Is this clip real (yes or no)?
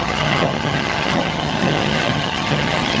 no